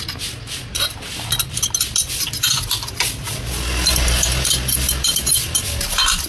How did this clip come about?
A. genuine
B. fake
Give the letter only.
A